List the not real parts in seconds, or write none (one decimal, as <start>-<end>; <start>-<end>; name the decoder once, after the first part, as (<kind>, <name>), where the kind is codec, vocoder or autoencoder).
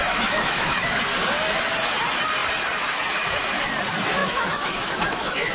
0.0-1.0 (autoencoder, DAC-VAE); 4.2-5.5